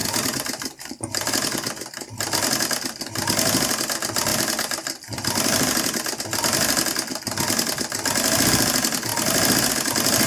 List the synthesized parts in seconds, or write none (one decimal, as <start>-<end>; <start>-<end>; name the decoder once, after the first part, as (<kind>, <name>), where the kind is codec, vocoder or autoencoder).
0.0-1.3 (vocoder, BigVGAN v2); 4.3-6.2